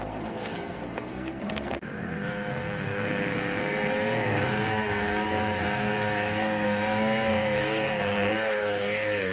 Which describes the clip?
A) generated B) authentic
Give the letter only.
A